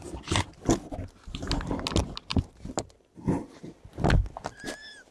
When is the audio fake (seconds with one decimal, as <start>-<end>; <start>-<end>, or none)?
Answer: none